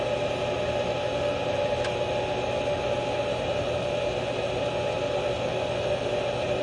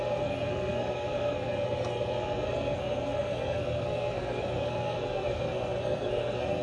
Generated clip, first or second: second